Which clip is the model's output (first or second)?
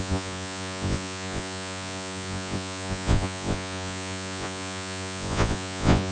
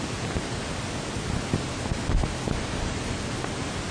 first